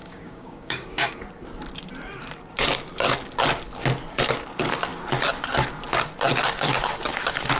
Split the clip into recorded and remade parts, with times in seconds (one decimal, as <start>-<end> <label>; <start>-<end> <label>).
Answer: 0.0-1.2 remade; 1.2-7.6 recorded